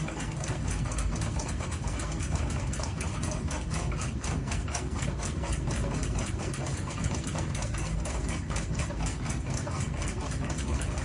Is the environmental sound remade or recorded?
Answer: remade